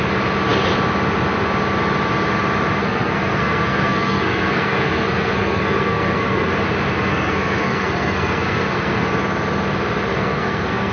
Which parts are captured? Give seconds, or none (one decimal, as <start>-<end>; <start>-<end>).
0.0-2.8; 6.5-7.1; 9.1-10.1